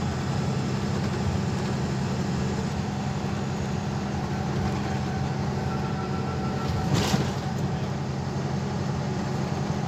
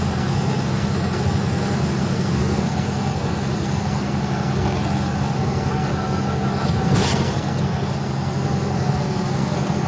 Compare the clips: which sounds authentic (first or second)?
first